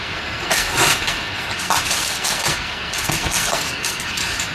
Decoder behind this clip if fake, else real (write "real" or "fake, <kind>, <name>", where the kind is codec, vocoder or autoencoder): fake, codec, SNAC